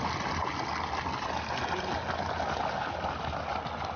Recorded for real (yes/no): yes